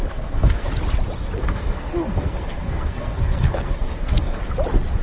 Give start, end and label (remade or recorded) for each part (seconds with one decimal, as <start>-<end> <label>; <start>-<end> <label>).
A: 0.0-0.7 remade; 0.7-1.4 recorded; 1.4-4.4 remade; 4.4-5.0 recorded